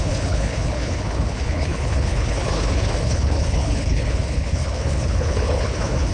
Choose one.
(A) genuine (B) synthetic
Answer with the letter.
B